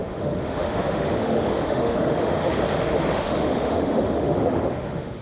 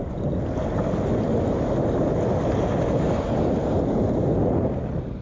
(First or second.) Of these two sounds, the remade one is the first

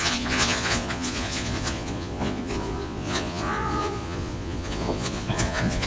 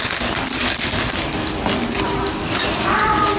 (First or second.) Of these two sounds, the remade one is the first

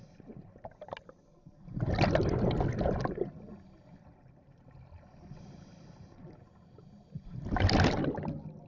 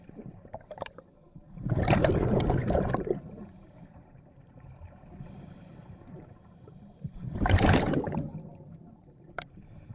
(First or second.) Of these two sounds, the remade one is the second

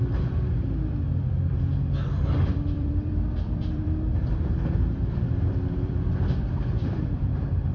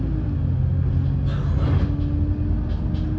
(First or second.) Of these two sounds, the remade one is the first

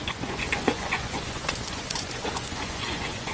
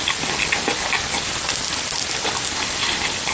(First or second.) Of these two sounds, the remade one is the first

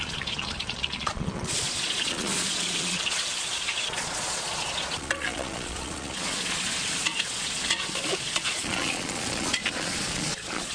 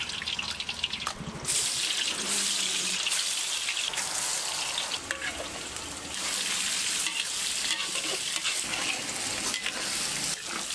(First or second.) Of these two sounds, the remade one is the first